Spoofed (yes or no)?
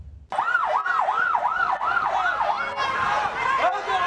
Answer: no